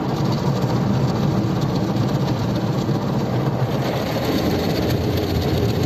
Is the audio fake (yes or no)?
no